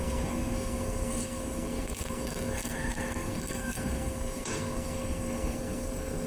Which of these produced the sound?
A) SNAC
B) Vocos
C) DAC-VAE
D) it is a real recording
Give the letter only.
A